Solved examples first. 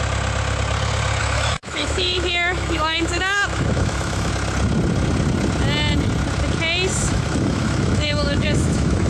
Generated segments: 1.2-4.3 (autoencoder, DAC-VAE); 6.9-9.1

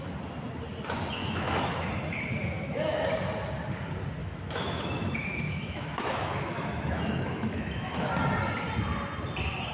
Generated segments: 1.2-1.9 (autoencoder, DAC-VAE); 2.4-3.1; 4.2-8.1

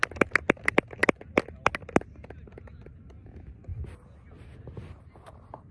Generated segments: none

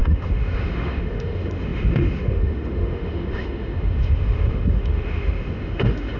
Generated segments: 0.0-6.2 (autoencoder, DAC-VAE)